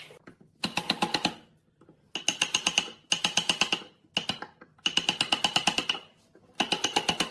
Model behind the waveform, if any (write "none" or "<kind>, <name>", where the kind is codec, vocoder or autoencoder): none